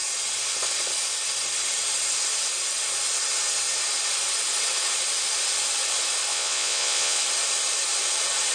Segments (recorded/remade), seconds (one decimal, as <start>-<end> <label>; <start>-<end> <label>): 0.0-6.3 recorded; 6.3-7.2 remade; 7.2-8.5 recorded